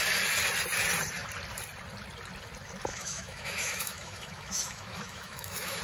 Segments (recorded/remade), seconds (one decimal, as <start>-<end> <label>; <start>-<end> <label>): 0.0-2.9 recorded; 2.9-5.8 remade